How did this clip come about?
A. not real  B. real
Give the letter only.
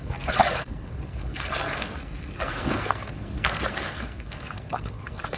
A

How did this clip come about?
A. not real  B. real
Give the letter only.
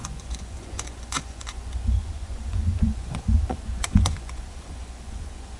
A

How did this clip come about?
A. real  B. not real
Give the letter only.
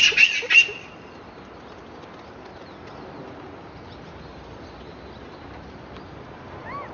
A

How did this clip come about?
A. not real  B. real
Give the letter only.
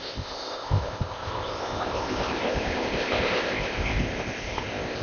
A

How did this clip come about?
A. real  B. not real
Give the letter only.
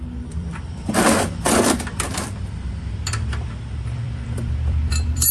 B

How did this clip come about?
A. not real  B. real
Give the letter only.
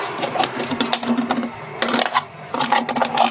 B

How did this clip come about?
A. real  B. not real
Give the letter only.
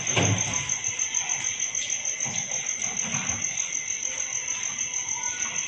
A